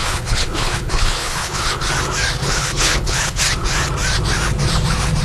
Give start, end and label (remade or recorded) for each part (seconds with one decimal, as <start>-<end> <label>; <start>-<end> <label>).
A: 0.0-1.9 remade; 1.9-2.4 recorded; 2.4-3.4 remade; 3.4-5.2 recorded